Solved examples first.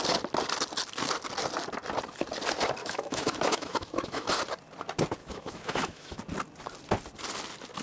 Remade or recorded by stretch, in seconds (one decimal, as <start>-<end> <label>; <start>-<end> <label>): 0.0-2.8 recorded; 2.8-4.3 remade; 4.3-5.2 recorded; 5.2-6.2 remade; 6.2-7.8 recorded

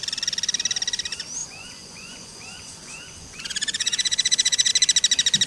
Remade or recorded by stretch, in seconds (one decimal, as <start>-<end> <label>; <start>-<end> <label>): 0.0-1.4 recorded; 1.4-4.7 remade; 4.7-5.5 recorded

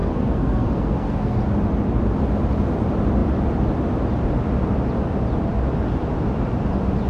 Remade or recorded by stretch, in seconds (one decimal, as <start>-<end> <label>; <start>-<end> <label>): 0.0-1.4 remade; 1.4-7.1 recorded

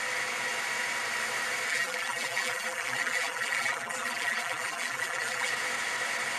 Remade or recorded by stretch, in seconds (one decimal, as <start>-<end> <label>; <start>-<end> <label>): 0.0-1.7 recorded; 1.7-5.5 remade; 5.5-6.4 recorded

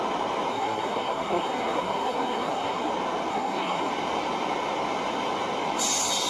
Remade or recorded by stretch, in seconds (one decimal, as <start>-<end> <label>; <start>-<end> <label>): 0.0-0.5 recorded; 0.5-2.9 remade; 2.9-3.3 recorded; 3.3-3.9 remade; 3.9-6.3 recorded

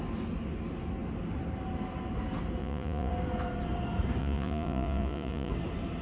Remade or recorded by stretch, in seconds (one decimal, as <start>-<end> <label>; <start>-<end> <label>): 0.0-2.6 recorded; 2.6-3.1 remade; 3.1-4.2 recorded; 4.2-5.5 remade; 5.5-6.0 recorded

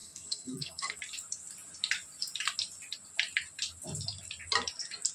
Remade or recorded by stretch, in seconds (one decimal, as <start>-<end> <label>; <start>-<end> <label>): 0.0-1.0 remade; 1.0-5.1 recorded